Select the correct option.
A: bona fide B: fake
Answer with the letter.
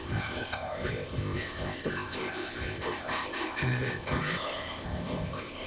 B